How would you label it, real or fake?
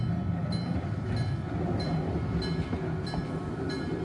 real